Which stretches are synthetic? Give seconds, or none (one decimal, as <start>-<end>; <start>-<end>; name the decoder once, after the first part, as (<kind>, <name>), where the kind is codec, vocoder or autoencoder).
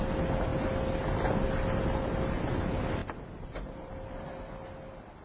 3.0-4.3 (vocoder, BigVGAN v2)